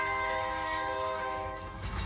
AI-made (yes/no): yes